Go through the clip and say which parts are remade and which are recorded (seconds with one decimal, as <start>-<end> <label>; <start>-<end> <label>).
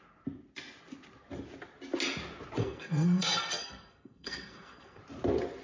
0.0-2.6 recorded; 2.6-5.0 remade; 5.0-5.6 recorded